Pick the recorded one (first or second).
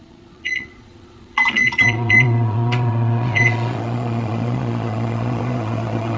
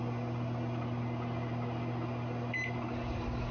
second